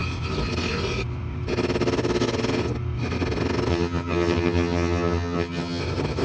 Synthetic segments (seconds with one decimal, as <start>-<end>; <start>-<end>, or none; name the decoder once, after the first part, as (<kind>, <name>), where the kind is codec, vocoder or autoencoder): 3.7-5.8 (vocoder, HiFi-GAN)